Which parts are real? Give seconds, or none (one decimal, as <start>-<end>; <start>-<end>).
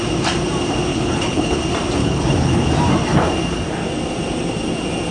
0.0-0.9; 1.6-2.0; 2.7-5.1